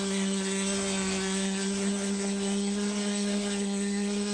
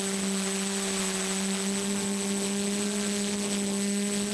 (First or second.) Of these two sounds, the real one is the second